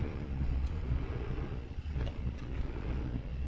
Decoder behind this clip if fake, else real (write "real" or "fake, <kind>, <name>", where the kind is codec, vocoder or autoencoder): fake, vocoder, Vocos